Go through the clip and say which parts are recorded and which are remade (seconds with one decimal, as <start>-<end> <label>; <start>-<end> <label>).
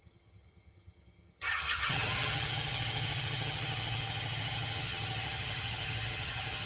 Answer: 0.0-6.7 remade